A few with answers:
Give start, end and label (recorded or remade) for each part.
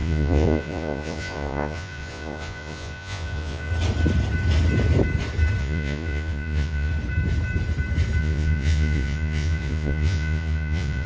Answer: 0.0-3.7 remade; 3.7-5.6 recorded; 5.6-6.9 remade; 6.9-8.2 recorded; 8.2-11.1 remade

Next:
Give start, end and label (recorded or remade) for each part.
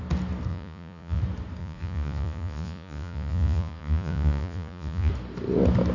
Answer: 0.0-0.5 recorded; 0.5-1.2 remade; 1.2-1.6 recorded; 1.6-5.1 remade; 5.1-5.9 recorded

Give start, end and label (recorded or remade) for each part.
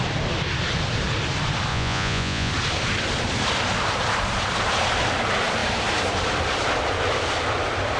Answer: 0.0-1.7 recorded; 1.7-2.5 remade; 2.5-8.0 recorded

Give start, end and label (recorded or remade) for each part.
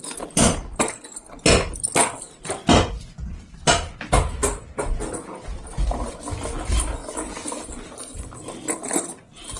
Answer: 0.0-9.6 recorded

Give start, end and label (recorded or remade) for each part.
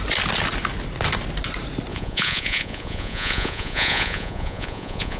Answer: 0.0-1.9 recorded; 1.9-5.2 remade